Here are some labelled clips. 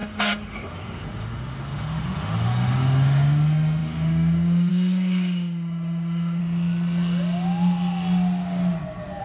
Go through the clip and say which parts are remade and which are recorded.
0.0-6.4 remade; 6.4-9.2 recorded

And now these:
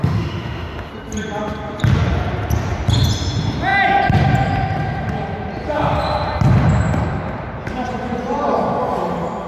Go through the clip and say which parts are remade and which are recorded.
0.0-0.9 remade; 0.9-9.5 recorded

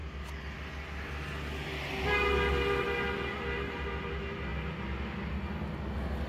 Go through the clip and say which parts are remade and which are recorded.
0.0-6.3 recorded